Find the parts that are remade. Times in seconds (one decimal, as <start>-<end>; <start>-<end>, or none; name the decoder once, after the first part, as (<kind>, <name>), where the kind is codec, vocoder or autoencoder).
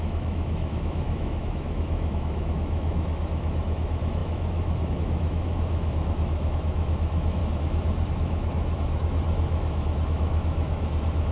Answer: 0.0-7.4 (autoencoder, DAC-VAE); 8.1-11.3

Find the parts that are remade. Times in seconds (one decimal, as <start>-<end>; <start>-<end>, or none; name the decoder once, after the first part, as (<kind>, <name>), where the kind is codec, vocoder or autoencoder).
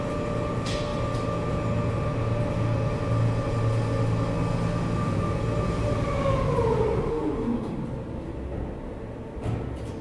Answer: 7.1-7.8 (autoencoder, DAC-VAE)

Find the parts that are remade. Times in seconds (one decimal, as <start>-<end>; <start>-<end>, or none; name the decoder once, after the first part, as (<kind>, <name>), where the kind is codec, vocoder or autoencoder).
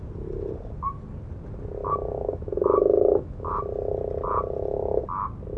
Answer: 1.8-3.6 (autoencoder, DAC-VAE)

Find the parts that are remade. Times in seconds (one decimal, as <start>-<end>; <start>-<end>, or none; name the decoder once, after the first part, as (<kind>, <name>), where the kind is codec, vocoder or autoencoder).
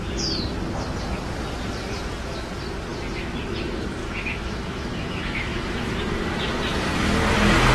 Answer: 4.0-5.8 (autoencoder, DAC-VAE)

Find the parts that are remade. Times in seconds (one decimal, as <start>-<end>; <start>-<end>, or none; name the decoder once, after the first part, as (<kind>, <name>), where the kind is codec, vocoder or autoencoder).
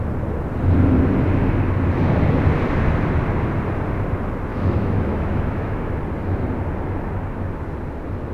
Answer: 4.5-6.0 (autoencoder, DAC-VAE)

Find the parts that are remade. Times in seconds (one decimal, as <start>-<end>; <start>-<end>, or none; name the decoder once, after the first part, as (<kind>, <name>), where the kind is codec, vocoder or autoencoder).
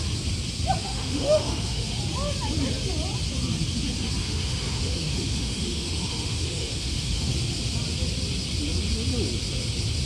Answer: 0.8-2.0 (autoencoder, DAC-VAE); 4.2-7.3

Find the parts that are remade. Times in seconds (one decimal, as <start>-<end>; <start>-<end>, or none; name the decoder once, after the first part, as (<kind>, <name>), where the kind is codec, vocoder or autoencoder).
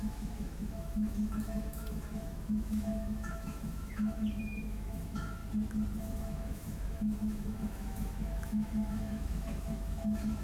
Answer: 0.0-5.4 (autoencoder, DAC-VAE); 6.0-10.4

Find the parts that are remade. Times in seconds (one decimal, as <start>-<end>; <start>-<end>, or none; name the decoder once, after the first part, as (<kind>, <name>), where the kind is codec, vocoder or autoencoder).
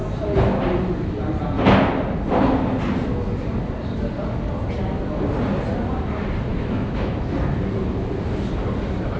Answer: 6.5-7.2 (autoencoder, DAC-VAE)